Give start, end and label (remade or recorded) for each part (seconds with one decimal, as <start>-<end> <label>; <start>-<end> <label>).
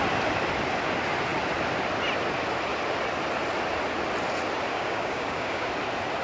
0.0-4.7 recorded; 4.7-5.7 remade; 5.7-6.2 recorded